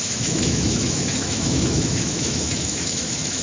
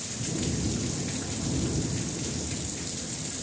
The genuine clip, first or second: second